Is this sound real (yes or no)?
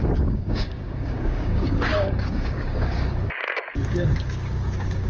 no